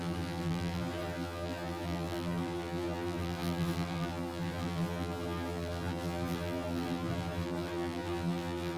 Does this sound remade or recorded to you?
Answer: remade